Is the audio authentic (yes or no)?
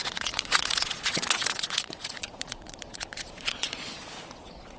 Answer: no